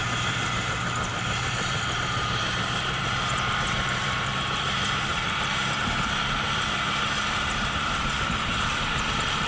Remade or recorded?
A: remade